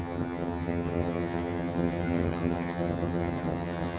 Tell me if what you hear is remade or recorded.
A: remade